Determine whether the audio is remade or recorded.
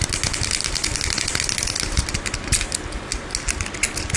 recorded